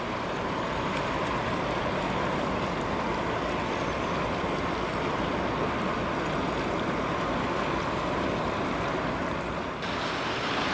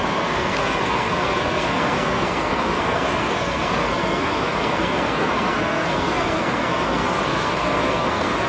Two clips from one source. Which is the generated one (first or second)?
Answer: second